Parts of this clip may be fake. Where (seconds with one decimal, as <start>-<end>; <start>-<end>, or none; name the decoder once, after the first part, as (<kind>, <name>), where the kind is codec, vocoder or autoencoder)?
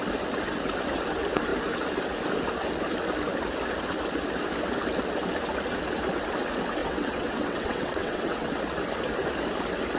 6.8-8.6 (vocoder, WaveNeXt)